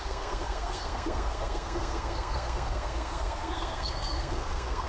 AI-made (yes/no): yes